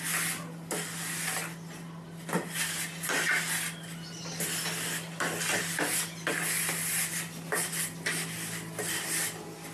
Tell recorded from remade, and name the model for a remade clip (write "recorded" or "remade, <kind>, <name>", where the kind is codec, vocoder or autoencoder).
recorded